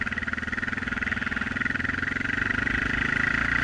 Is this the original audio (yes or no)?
yes